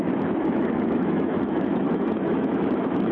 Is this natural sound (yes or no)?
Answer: no